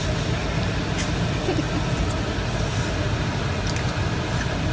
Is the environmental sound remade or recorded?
recorded